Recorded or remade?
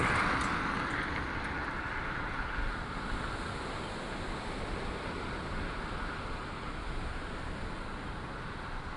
recorded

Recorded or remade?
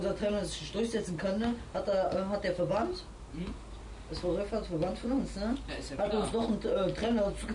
recorded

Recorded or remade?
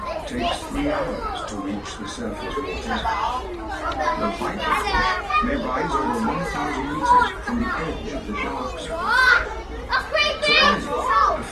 recorded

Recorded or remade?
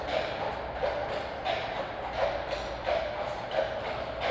recorded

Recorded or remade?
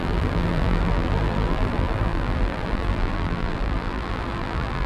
remade